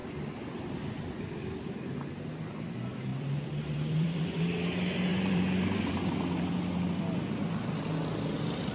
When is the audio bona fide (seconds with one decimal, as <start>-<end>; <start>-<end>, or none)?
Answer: 0.0-3.1; 4.4-5.1; 5.9-8.7